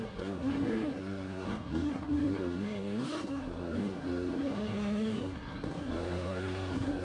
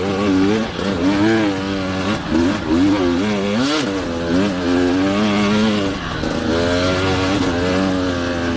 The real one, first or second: second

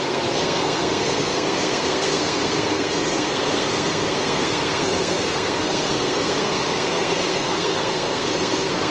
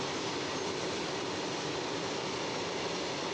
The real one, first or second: second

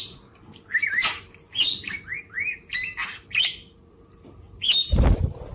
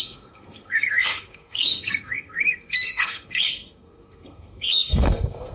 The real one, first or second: first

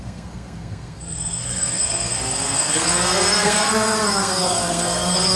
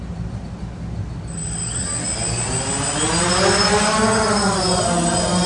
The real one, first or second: second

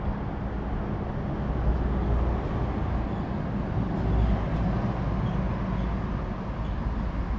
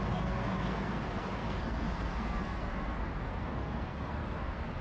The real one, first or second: first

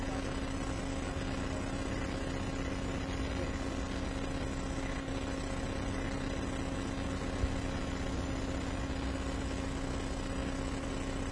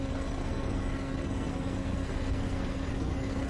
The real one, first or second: first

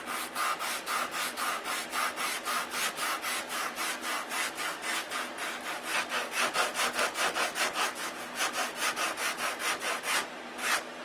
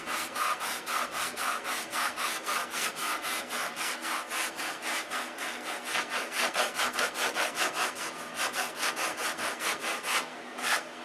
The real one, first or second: first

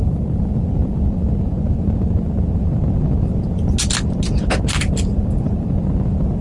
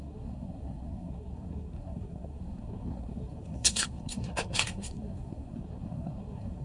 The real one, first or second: first